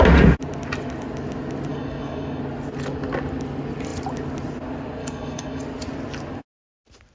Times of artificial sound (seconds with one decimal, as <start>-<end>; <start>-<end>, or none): 1.7-2.4; 5.0-5.6